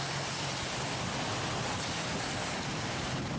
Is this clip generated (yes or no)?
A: yes